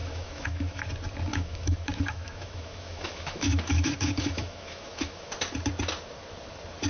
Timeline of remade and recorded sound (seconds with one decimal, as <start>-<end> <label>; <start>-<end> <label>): 0.0-0.9 remade; 0.9-1.3 recorded; 1.3-5.3 remade; 5.3-6.9 recorded